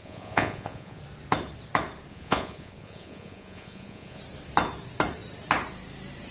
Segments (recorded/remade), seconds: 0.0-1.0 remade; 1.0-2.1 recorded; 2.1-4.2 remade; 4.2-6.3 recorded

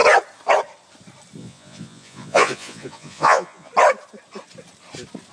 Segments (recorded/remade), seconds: 0.0-1.4 recorded; 1.4-3.7 remade; 3.7-5.3 recorded

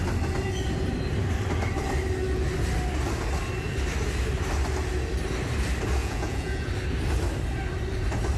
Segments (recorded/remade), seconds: 0.0-6.0 recorded; 6.0-6.7 remade; 6.7-8.4 recorded

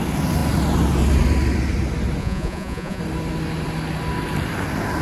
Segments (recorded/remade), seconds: 0.0-2.2 recorded; 2.2-3.0 remade; 3.0-5.0 recorded

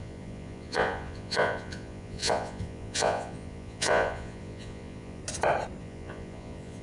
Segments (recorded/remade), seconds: 0.0-5.2 remade; 5.2-5.8 recorded; 5.8-6.8 remade

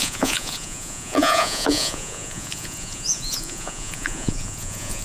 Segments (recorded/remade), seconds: 0.0-5.0 remade

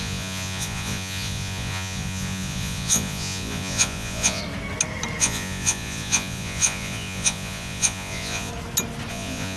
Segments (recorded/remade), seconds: 0.0-4.4 remade; 4.4-5.2 recorded; 5.2-8.5 remade; 8.5-9.1 recorded; 9.1-9.6 remade

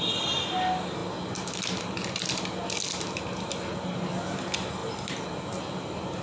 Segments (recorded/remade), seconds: 0.0-6.2 recorded